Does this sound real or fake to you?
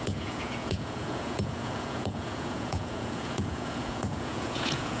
fake